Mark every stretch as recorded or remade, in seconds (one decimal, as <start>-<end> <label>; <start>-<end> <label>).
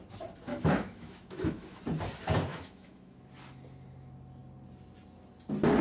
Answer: 0.0-0.5 recorded; 0.5-1.8 remade; 1.8-2.5 recorded; 2.5-3.2 remade; 3.2-5.8 recorded